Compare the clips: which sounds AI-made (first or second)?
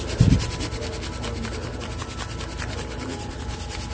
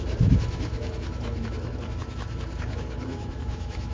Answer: second